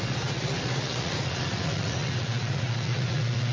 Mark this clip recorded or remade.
remade